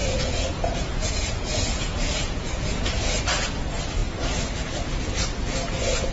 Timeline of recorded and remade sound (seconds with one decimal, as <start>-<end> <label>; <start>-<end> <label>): 0.0-3.2 remade; 3.2-6.1 recorded